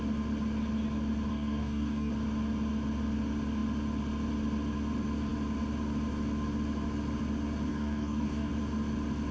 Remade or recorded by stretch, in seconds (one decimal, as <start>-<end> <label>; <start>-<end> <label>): 0.0-1.3 recorded; 1.3-2.1 remade; 2.1-7.7 recorded; 7.7-8.5 remade; 8.5-9.3 recorded